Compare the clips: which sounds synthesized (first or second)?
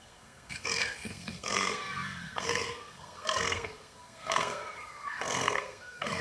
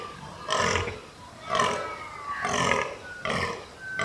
first